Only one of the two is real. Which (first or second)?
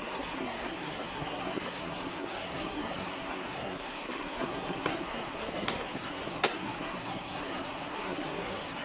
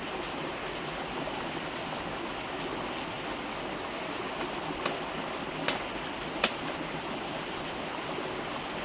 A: second